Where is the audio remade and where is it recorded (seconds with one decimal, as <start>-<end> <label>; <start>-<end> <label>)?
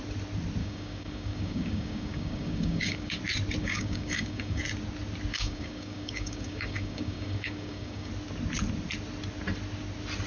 0.0-0.6 recorded; 0.6-3.2 remade; 3.2-3.6 recorded; 3.6-4.6 remade; 4.6-5.3 recorded; 5.3-8.1 remade; 8.1-10.3 recorded